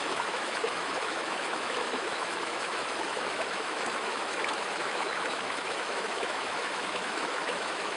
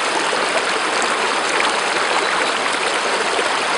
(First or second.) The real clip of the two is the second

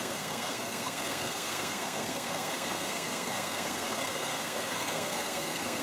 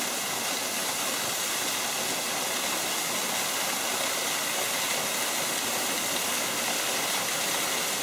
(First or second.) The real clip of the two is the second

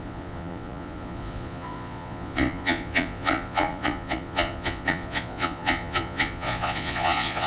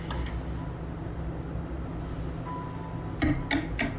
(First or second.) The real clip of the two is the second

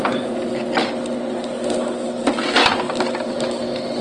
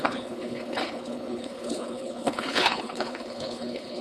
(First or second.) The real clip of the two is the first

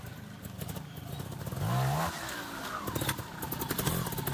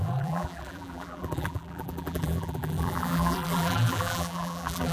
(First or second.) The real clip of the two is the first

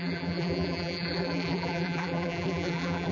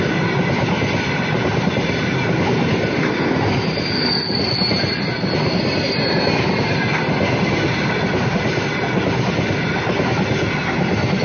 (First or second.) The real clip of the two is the second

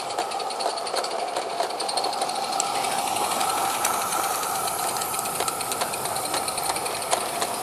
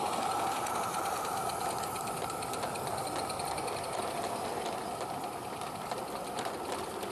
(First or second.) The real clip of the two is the second